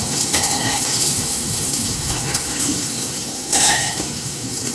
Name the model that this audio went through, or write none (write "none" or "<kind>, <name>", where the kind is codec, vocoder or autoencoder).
codec, SNAC